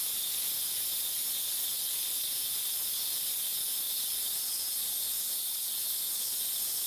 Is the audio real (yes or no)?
no